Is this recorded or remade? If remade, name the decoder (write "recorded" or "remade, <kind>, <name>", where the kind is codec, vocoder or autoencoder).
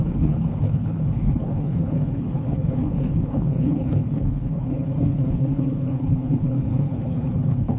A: remade, codec, HILCodec